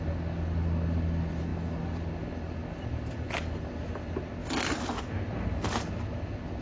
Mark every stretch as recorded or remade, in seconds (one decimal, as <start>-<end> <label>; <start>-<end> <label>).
0.0-6.6 recorded